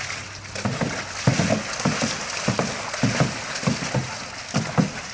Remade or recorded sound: recorded